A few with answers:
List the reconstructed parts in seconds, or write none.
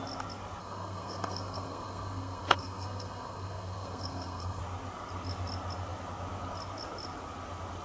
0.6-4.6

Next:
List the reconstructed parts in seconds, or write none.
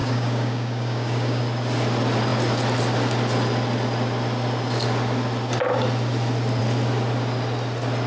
0.0-1.4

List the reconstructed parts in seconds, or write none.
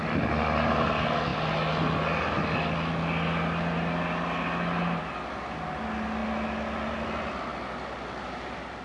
none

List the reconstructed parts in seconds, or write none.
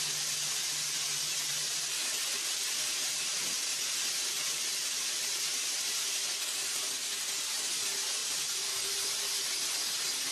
1.6-3.8; 8.2-9.7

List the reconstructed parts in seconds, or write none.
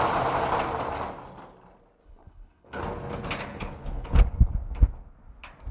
2.0-2.8; 3.4-4.2